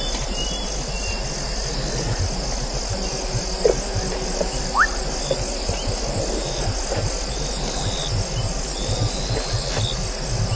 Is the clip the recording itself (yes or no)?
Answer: yes